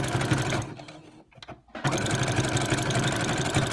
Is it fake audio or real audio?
real